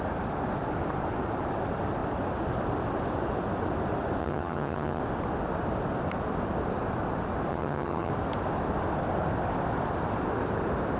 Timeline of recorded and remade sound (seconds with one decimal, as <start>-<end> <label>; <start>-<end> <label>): 0.0-4.2 recorded; 4.2-5.0 remade; 5.0-7.5 recorded; 7.5-8.1 remade; 8.1-11.0 recorded